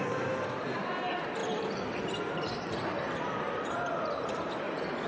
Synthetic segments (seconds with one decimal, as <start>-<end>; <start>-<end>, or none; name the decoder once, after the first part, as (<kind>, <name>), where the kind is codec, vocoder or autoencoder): 1.4-4.5 (vocoder, BigVGAN v2)